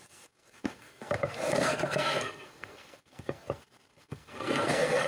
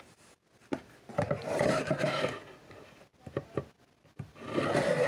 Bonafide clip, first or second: second